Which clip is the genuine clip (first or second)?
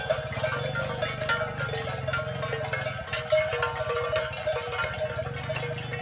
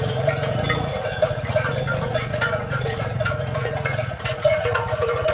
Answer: first